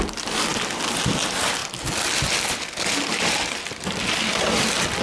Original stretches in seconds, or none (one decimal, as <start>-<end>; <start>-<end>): 0.0-5.0

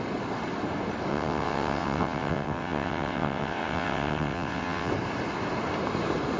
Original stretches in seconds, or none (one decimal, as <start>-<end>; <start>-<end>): 0.0-1.1; 4.9-6.4

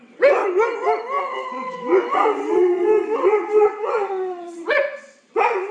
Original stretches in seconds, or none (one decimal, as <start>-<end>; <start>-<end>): 0.4-1.2

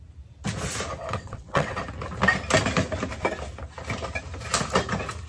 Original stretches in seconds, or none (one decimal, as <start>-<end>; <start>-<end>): 0.0-1.0; 1.8-5.3

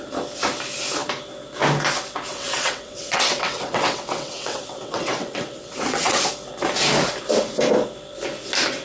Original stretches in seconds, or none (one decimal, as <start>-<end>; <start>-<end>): 0.0-2.3; 6.2-8.8

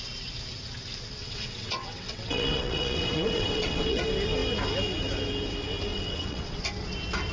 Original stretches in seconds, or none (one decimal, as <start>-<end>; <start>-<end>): 0.0-1.2; 4.0-5.9; 6.6-7.3